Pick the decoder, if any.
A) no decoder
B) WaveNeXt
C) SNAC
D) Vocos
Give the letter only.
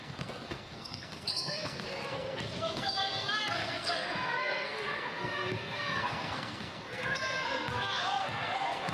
C